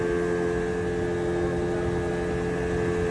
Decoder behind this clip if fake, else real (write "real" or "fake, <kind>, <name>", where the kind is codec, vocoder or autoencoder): real